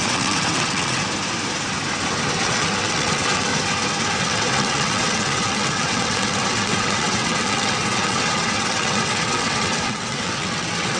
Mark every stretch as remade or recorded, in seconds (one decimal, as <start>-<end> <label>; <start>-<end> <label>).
0.0-1.0 remade; 1.0-2.4 recorded; 2.4-3.5 remade; 3.5-4.2 recorded; 4.2-11.0 remade